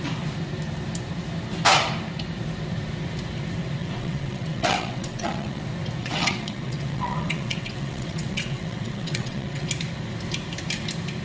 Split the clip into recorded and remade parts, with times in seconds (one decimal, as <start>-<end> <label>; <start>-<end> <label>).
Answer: 0.0-3.8 recorded; 3.8-5.6 remade; 5.6-6.0 recorded; 6.0-9.7 remade; 9.7-11.2 recorded